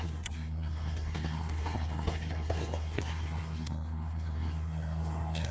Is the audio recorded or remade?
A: remade